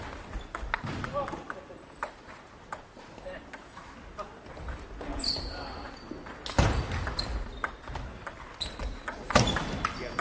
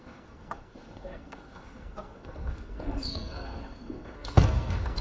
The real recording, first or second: first